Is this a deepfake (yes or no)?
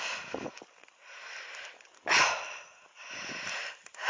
no